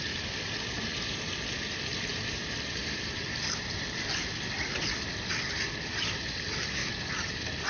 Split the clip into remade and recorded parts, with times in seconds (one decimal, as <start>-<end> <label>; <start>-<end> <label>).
0.0-6.8 remade; 6.8-7.3 recorded; 7.3-7.7 remade